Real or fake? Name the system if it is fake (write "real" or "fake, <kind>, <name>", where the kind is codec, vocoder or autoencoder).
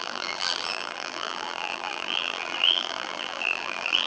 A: fake, vocoder, BigVGAN v2